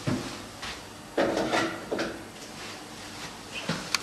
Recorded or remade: recorded